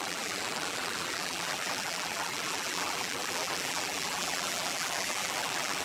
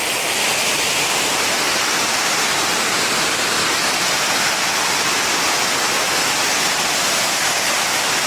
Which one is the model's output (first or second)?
first